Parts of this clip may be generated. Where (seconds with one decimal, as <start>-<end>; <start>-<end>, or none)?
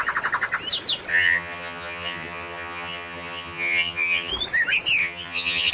1.1-4.3; 5.0-5.7